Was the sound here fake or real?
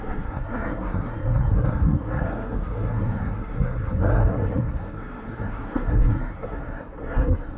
fake